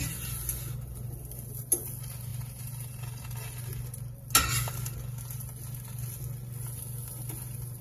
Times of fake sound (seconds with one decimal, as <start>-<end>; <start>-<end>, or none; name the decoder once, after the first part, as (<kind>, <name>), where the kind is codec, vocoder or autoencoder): none